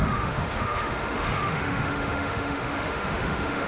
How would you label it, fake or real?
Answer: fake